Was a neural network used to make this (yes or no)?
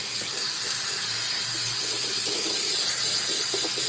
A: no